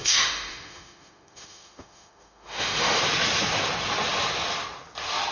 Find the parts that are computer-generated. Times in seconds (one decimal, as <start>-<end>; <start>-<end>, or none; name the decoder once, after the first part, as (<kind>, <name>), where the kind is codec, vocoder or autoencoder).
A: 0.0-3.0 (autoencoder, DAC-VAE)